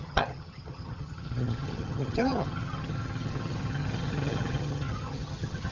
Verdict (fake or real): fake